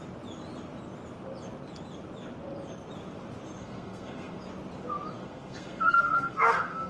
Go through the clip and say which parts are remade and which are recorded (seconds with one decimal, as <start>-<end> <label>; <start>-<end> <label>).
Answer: 0.0-3.6 recorded; 3.6-4.4 remade; 4.4-5.2 recorded; 5.2-6.9 remade